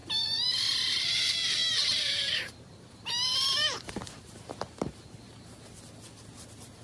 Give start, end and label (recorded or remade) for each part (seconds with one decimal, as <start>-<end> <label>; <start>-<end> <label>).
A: 0.0-1.0 remade; 1.0-1.6 recorded; 1.6-5.5 remade; 5.5-6.8 recorded